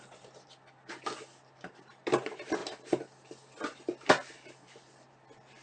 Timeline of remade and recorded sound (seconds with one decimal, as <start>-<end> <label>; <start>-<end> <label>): 0.0-5.6 recorded